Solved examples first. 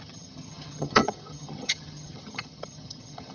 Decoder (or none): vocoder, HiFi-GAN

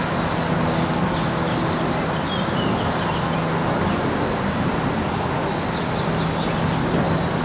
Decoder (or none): none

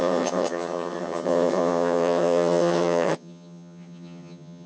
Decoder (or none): vocoder, HiFi-GAN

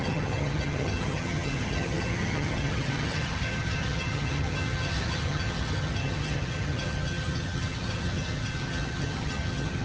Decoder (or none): vocoder, HiFi-GAN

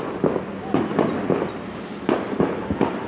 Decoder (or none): none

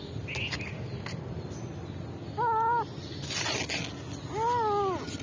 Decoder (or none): none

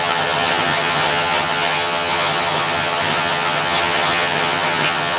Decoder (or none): vocoder, HiFi-GAN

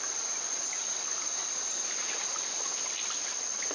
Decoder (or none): none